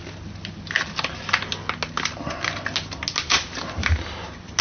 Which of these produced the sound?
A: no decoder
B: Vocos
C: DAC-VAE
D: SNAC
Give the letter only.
A